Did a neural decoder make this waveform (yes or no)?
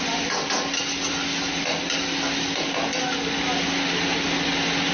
no